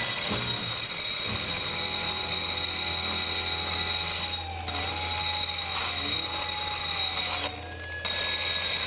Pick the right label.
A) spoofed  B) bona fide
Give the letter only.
B